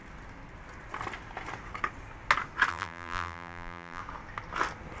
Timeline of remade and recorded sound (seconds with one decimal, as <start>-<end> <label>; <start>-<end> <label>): 0.0-2.7 recorded; 2.7-4.0 remade; 4.0-5.0 recorded

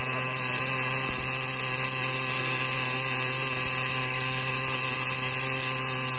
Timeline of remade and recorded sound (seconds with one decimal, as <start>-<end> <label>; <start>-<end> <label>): 0.0-4.0 recorded; 4.0-4.5 remade; 4.5-6.2 recorded